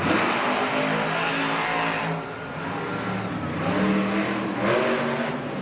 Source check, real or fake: real